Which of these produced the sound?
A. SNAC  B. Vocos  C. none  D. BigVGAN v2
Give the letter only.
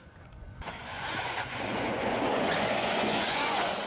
B